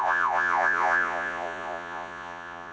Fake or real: fake